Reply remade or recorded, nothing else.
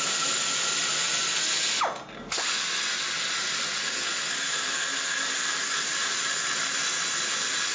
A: recorded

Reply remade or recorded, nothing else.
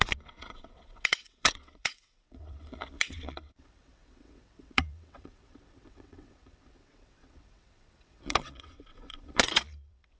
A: remade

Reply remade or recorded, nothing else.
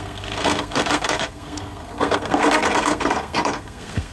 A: remade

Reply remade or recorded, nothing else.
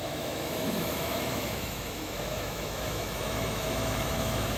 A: remade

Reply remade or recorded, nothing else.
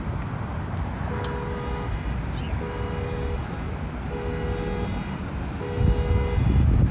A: recorded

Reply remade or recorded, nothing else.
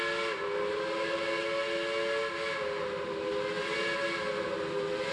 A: recorded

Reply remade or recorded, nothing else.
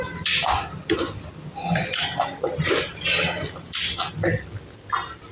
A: recorded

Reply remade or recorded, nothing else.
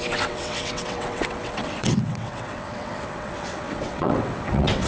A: remade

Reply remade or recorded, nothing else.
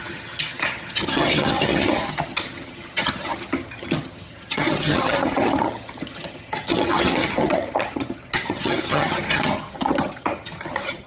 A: remade